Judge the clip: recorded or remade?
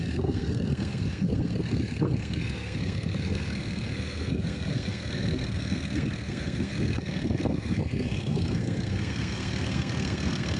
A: remade